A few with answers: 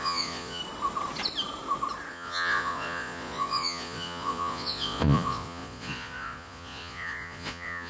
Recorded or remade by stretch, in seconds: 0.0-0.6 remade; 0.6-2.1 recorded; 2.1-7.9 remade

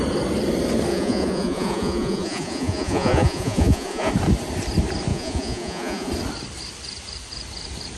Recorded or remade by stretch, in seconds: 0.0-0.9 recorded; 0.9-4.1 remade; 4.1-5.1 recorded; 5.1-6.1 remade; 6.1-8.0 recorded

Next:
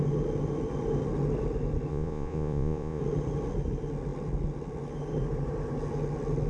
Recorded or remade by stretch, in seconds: 0.0-1.9 recorded; 1.9-3.0 remade; 3.0-6.5 recorded

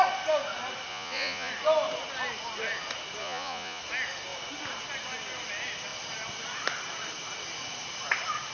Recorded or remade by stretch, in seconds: 0.0-0.9 recorded; 0.9-1.5 remade; 1.5-3.2 recorded; 3.2-3.8 remade; 3.8-8.5 recorded